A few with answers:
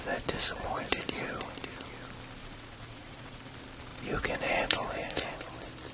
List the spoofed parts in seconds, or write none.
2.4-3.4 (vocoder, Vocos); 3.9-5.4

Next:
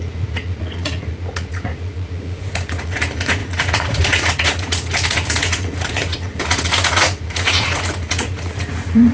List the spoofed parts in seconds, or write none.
0.0-9.1 (vocoder, Vocos)

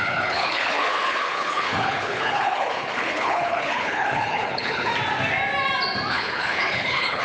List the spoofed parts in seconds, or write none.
0.0-4.9 (codec, HILCodec); 6.1-7.2

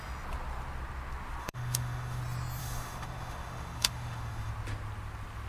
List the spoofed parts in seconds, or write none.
1.4-2.2 (autoencoder, DAC-VAE); 2.6-4.5

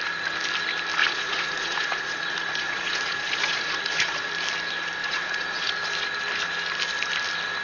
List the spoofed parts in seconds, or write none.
1.0-4.3 (vocoder, Vocos); 5.0-5.7

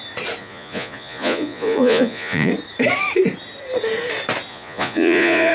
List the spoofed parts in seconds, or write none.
0.4-2.5 (vocoder, Vocos); 4.5-5.5

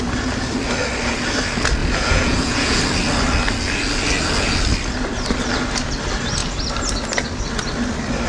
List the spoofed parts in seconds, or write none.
1.8-2.8 (vocoder, Vocos)

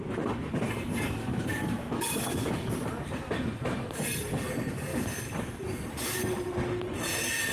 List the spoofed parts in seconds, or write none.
1.2-2.9 (autoencoder, DAC-VAE)